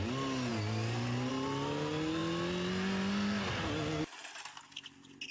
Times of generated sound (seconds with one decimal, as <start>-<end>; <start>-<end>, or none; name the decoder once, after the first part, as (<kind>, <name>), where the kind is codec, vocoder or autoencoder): none